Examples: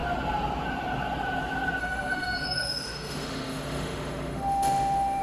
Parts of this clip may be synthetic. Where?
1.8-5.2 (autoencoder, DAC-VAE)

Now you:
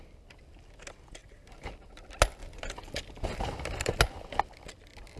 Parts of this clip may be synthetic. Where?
1.2-2.0 (vocoder, BigVGAN v2); 2.4-4.0